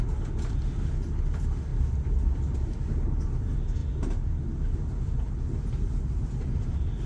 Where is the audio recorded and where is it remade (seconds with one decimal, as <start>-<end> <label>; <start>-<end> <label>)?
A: 0.0-7.1 recorded